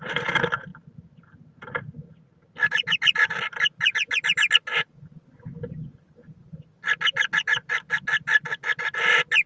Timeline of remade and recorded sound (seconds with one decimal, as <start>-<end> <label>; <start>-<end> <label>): 0.0-9.5 recorded